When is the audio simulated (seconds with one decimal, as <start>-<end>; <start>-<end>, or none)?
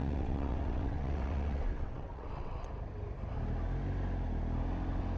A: 0.0-2.7